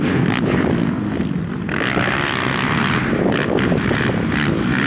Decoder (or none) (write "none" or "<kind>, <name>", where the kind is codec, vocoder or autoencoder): none